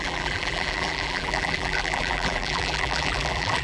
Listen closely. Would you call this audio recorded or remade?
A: remade